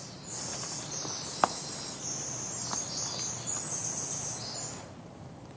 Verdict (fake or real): real